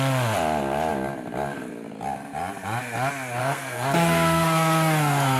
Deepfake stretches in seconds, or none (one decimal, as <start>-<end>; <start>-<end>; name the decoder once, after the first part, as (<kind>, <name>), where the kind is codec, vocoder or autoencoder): 3.4-5.4 (codec, SNAC)